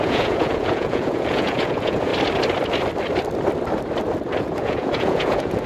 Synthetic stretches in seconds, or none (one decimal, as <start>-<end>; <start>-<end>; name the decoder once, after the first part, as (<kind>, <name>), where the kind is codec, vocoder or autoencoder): 0.0-2.1 (vocoder, Vocos); 4.4-5.7